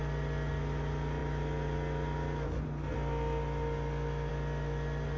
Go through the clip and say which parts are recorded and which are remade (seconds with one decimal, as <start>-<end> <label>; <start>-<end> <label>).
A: 0.0-5.2 recorded